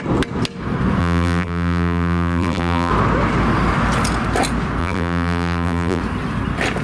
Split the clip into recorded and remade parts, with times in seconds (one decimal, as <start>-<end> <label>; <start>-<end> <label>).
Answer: 0.0-1.0 recorded; 1.0-2.9 remade; 2.9-4.8 recorded; 4.8-6.0 remade; 6.0-6.8 recorded